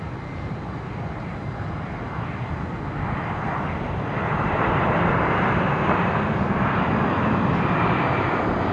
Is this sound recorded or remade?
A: recorded